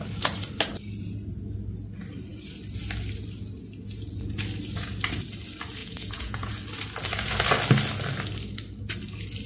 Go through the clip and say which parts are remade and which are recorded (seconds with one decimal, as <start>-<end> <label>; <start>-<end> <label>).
0.0-5.8 recorded; 5.8-6.5 remade; 6.5-9.5 recorded